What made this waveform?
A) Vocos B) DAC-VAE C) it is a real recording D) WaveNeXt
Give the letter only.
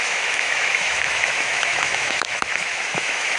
B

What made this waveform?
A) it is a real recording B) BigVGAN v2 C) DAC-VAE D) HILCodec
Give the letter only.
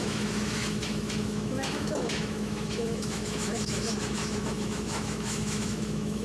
C